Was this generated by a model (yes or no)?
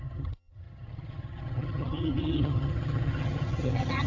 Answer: yes